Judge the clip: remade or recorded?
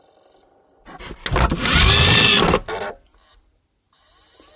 recorded